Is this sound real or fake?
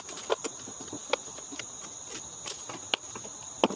real